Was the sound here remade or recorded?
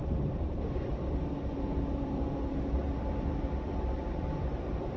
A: remade